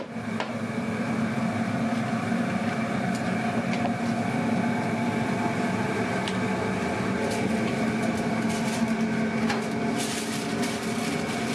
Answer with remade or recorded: recorded